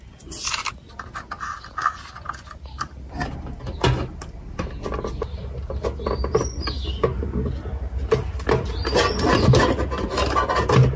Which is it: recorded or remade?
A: recorded